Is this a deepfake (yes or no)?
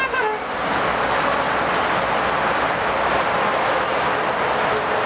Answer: no